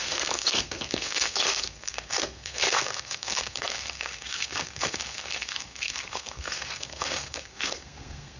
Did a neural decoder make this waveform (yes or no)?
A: yes